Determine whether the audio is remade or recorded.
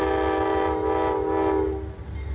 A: recorded